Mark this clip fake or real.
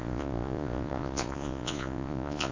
fake